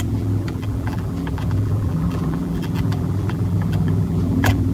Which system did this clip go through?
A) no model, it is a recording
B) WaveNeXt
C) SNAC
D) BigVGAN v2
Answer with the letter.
D